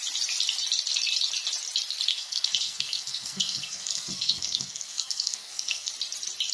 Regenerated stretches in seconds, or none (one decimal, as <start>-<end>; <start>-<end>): 2.1-5.9